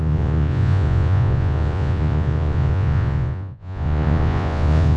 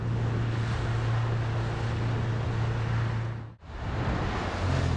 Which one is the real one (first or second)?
second